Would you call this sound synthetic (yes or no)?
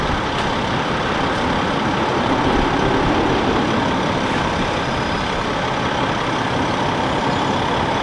yes